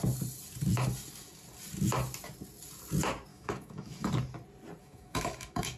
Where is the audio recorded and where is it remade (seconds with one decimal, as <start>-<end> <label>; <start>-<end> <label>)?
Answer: 0.0-3.3 recorded; 3.3-4.1 remade; 4.1-4.8 recorded; 4.8-5.8 remade